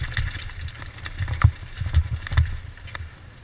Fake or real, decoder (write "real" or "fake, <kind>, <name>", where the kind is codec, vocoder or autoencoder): real